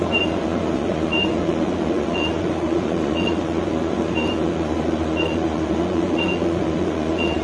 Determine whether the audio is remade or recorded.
remade